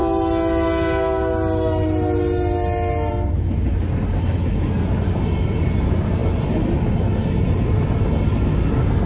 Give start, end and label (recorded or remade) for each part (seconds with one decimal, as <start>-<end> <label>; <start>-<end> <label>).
0.0-9.1 recorded